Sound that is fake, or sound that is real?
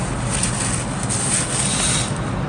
real